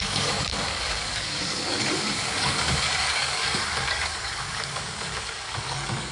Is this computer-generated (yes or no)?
yes